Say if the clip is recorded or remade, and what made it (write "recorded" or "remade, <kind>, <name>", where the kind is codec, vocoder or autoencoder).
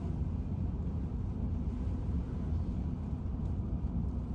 recorded